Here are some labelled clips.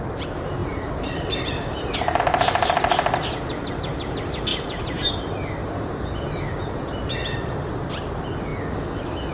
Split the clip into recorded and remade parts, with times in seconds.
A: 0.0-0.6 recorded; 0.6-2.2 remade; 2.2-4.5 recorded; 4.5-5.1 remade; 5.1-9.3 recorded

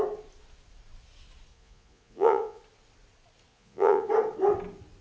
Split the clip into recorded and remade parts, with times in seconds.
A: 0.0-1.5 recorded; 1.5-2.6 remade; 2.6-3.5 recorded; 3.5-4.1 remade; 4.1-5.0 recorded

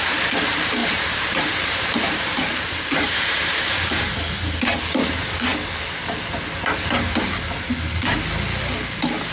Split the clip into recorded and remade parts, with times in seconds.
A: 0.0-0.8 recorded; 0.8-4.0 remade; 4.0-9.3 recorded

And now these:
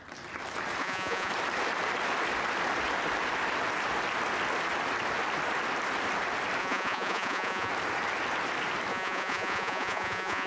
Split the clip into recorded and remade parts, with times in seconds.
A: 0.0-0.8 recorded; 0.8-1.3 remade; 1.3-6.6 recorded; 6.6-7.7 remade; 7.7-8.9 recorded; 8.9-10.5 remade

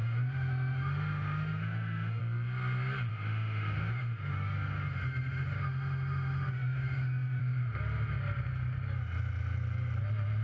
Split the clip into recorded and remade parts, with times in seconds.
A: 0.0-2.2 remade; 2.2-3.1 recorded; 3.1-7.4 remade; 7.4-10.4 recorded